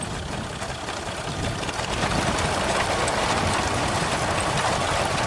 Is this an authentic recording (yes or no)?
yes